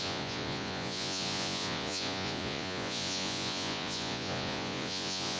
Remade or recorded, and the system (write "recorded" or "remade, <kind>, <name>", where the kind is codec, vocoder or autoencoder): remade, vocoder, Vocos